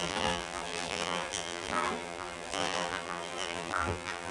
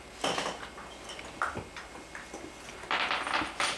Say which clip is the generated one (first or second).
first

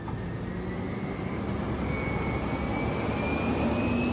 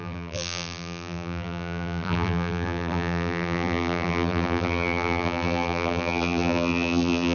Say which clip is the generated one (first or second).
second